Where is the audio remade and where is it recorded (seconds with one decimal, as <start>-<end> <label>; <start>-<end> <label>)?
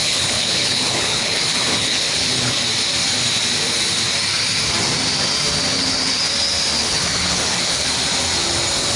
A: 0.0-2.6 remade; 2.6-5.7 recorded; 5.7-6.2 remade; 6.2-6.8 recorded; 6.8-7.9 remade; 7.9-9.0 recorded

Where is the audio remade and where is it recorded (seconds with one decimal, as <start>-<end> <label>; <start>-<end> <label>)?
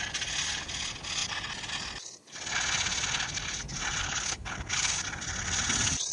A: 0.0-4.0 recorded; 4.0-4.9 remade; 4.9-6.1 recorded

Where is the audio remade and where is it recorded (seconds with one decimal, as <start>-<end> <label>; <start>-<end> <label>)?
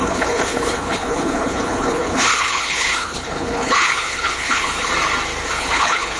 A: 0.0-4.9 remade; 4.9-5.5 recorded; 5.5-6.2 remade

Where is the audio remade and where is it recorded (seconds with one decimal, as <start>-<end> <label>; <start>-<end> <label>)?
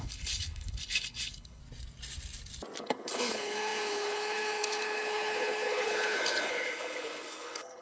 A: 0.0-1.6 remade; 1.6-2.8 recorded; 2.8-7.8 remade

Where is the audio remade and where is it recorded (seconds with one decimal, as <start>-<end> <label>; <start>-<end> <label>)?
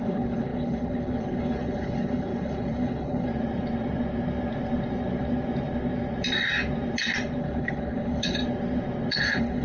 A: 0.0-3.3 remade; 3.3-7.4 recorded; 7.4-8.4 remade; 8.4-9.1 recorded; 9.1-9.6 remade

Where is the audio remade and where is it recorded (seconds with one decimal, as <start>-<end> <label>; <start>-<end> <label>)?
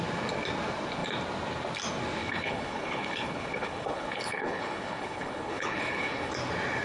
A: 0.0-2.2 recorded; 2.2-6.3 remade; 6.3-6.8 recorded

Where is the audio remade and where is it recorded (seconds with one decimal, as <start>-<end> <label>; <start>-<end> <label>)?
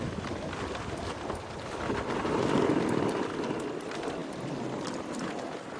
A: 0.0-5.8 recorded